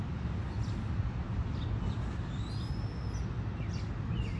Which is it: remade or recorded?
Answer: recorded